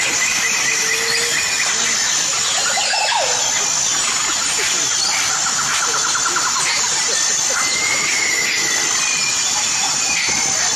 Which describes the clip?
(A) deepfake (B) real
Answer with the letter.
B